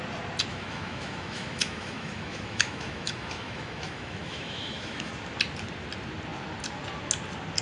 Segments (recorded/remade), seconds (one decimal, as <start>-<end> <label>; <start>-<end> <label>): 0.0-0.5 recorded; 0.5-5.1 remade; 5.1-7.6 recorded

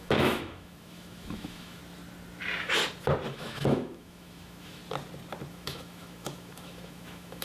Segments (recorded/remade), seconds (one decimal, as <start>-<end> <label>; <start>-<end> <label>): 0.0-1.8 remade; 1.8-3.3 recorded; 3.3-4.8 remade; 4.8-5.5 recorded; 5.5-7.4 remade

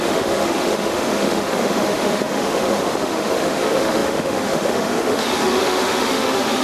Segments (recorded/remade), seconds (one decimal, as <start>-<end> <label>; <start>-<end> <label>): 0.0-6.6 remade

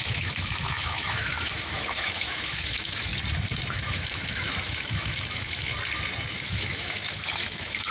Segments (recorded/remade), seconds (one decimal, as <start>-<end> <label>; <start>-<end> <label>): 0.0-3.1 remade; 3.1-3.7 recorded; 3.7-5.7 remade; 5.7-6.3 recorded; 6.3-7.9 remade

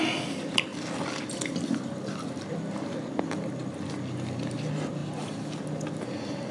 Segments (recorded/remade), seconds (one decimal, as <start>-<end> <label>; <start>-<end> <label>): 0.0-6.5 recorded

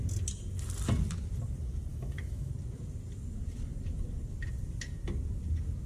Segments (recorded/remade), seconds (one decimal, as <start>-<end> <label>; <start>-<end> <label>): 0.0-1.9 recorded; 1.9-2.5 remade; 2.5-5.9 recorded